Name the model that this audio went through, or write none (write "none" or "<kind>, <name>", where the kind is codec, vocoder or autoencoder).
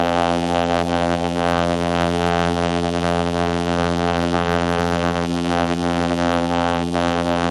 vocoder, BigVGAN v2